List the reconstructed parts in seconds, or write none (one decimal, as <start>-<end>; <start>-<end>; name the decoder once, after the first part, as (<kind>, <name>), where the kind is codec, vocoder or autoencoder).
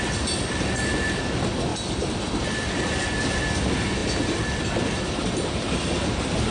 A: none